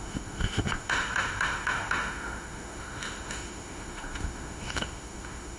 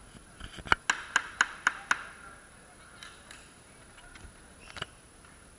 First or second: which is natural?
second